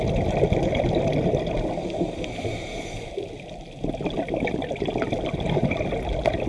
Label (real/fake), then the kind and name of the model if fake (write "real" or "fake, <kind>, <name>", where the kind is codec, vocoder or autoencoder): real